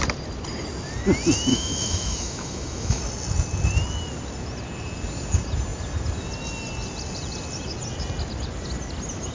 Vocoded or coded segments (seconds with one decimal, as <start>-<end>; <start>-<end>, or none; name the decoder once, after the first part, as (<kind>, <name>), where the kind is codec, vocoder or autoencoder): 1.5-3.0 (autoencoder, DAC-VAE)